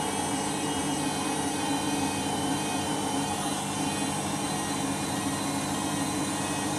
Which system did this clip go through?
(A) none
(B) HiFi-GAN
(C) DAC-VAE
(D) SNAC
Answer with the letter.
A